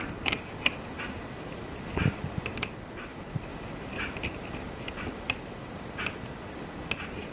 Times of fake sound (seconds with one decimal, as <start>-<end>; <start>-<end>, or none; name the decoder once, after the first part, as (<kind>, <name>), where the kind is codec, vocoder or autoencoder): none